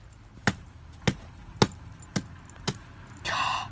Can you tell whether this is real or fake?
real